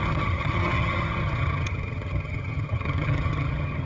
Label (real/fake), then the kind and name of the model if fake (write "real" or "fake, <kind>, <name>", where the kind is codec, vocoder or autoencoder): fake, vocoder, HiFi-GAN